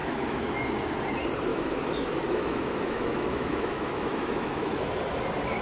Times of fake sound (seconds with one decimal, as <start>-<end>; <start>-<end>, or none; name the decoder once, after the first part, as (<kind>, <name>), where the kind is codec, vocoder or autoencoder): 0.0-0.5 (autoencoder, DAC-VAE); 1.5-4.9